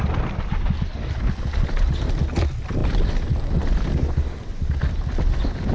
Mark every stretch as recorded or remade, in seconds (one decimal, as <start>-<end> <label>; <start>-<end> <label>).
0.0-5.7 recorded